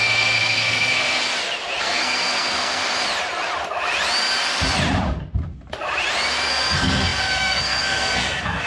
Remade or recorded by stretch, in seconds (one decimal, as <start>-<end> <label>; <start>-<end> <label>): 0.0-1.2 remade; 1.2-1.8 recorded; 1.8-2.8 remade; 2.8-6.5 recorded; 6.5-8.7 remade